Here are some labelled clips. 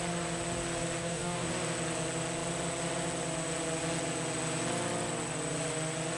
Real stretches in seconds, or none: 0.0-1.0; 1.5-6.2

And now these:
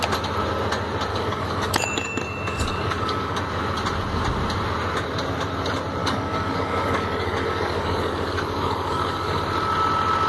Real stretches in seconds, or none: 0.0-1.1; 3.4-6.0; 9.4-10.3

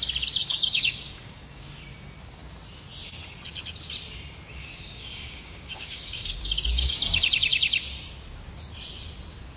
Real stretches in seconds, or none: 0.0-0.4; 1.8-4.6; 6.9-9.6